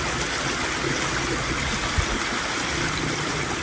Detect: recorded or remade recorded